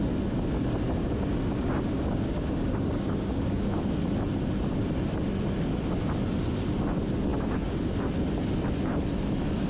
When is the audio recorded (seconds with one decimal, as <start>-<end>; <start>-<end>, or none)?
0.0-1.0; 3.9-7.3; 7.9-9.7